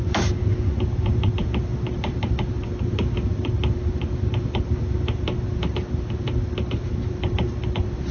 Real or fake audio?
real